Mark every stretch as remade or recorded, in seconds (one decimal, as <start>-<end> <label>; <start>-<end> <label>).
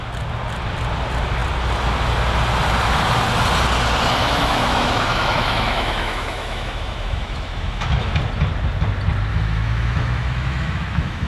0.0-4.2 recorded; 4.2-8.2 remade; 8.2-9.3 recorded; 9.3-11.3 remade